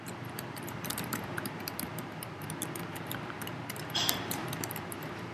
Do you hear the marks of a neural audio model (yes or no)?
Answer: yes